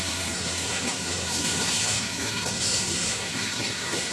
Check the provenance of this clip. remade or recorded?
remade